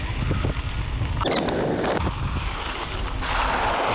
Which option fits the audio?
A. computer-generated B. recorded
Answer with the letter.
B